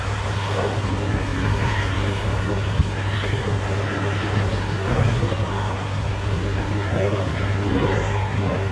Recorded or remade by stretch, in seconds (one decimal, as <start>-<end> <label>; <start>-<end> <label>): 0.0-8.7 remade